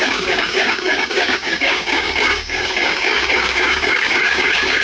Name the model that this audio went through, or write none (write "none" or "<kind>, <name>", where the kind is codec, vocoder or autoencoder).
codec, DAC